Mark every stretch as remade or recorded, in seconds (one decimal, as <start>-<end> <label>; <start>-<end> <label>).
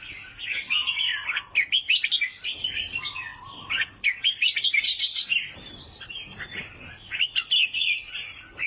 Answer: 0.0-1.1 recorded; 1.1-1.7 remade; 1.7-3.3 recorded; 3.3-8.7 remade